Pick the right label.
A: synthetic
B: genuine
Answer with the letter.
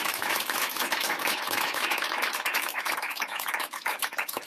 A